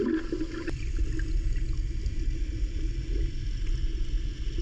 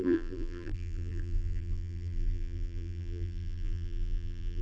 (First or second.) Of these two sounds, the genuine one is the first